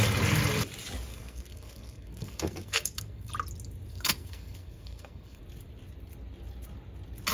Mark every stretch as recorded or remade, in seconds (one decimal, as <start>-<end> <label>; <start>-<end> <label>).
0.0-1.1 recorded; 1.1-3.3 remade; 3.3-3.9 recorded; 3.9-5.4 remade; 5.4-7.3 recorded

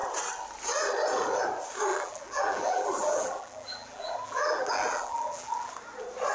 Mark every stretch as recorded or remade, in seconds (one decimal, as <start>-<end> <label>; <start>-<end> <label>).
0.0-1.9 recorded; 1.9-5.7 remade; 5.7-6.3 recorded